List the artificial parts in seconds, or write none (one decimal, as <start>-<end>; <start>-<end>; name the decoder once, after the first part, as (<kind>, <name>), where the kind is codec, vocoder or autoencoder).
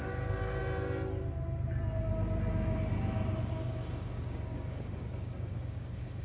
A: 0.0-0.6 (codec, DAC); 3.4-6.2